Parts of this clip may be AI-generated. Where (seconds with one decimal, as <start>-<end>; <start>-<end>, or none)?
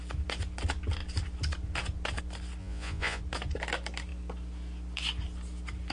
2.6-3.2